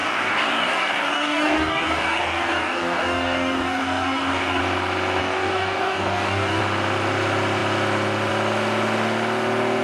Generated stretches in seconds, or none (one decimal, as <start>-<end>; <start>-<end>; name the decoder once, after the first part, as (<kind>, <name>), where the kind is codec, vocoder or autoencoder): 0.0-4.6 (codec, DAC); 5.2-6.6